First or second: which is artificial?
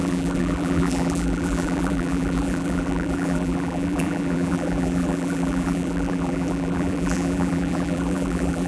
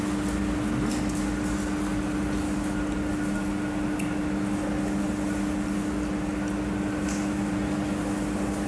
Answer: first